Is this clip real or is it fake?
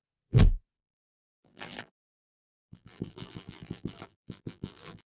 fake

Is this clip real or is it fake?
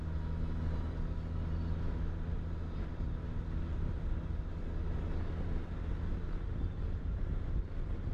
real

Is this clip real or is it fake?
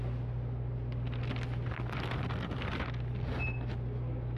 real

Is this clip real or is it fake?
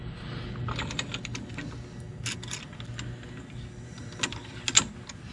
real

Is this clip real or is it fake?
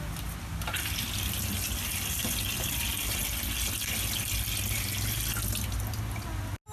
real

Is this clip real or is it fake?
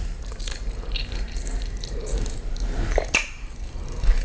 fake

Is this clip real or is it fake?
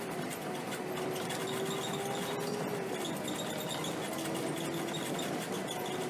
real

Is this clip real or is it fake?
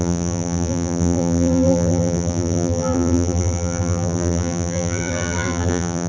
fake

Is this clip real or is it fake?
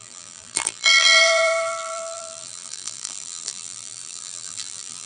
fake